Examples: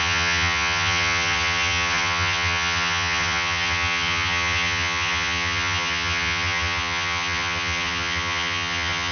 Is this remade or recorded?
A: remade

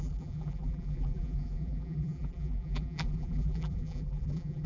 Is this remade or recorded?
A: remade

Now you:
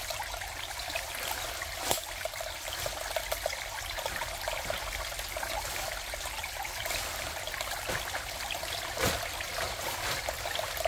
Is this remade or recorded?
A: recorded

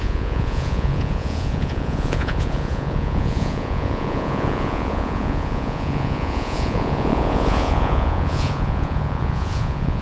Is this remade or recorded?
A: remade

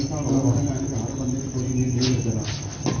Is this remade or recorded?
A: recorded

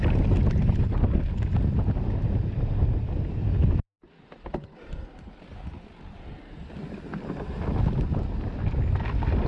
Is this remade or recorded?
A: recorded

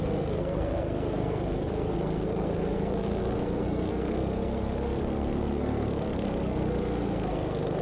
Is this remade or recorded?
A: remade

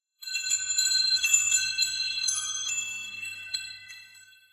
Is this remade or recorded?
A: remade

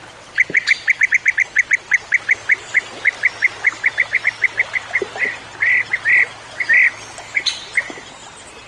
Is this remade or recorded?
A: recorded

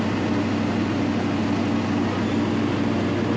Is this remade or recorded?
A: recorded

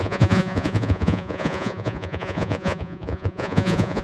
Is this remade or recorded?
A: remade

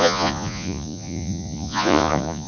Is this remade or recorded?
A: remade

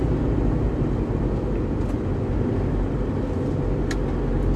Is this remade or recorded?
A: recorded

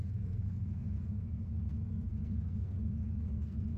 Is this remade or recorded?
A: remade